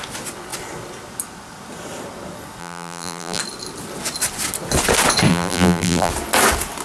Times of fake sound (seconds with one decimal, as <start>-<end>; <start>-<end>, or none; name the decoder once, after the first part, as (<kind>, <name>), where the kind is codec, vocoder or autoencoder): 2.6-3.4 (vocoder, BigVGAN v2); 5.3-6.1